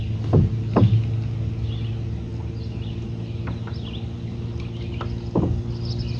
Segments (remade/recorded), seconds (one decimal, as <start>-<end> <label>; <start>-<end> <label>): 0.0-6.2 recorded